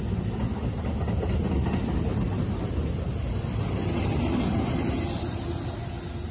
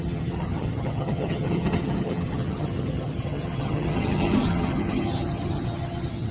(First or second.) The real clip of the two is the first